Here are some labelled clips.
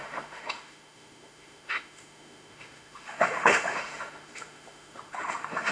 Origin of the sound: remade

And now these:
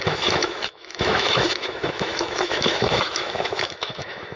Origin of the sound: remade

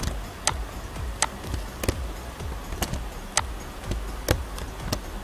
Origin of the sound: recorded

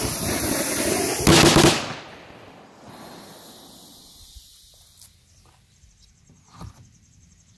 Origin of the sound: recorded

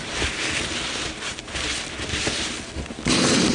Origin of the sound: recorded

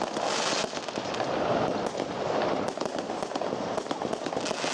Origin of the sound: recorded